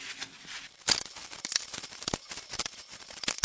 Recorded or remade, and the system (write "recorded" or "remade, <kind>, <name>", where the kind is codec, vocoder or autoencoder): recorded